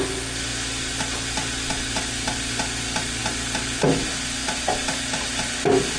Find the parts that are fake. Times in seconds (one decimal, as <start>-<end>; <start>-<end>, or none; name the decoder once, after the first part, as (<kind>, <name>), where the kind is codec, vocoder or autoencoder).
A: none